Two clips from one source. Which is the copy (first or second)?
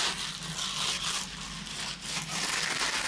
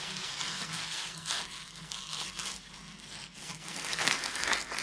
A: second